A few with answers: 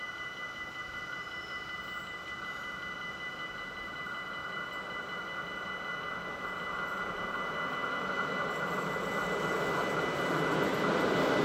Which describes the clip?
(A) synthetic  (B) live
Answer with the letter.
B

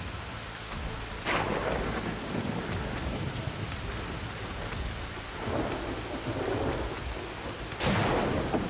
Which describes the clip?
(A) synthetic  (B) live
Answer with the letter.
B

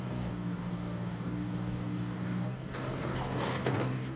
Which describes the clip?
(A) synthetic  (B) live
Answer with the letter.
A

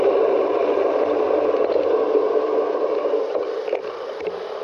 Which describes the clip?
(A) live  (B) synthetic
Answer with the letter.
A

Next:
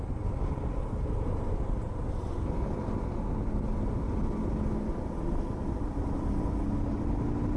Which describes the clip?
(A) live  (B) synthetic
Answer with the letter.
A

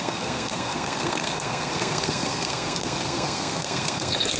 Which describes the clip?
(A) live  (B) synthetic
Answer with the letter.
B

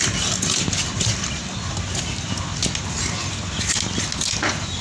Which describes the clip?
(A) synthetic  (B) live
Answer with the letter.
B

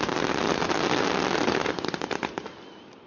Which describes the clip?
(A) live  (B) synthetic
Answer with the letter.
A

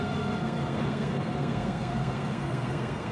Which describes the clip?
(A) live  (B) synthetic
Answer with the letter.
B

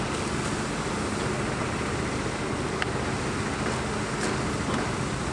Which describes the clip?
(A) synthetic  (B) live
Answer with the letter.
B